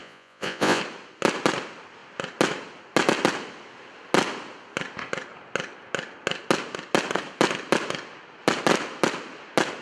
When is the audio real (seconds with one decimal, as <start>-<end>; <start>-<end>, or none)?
0.8-9.8